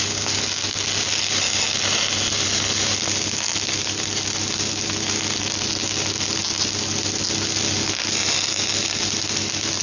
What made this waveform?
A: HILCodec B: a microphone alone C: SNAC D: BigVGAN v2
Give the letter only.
B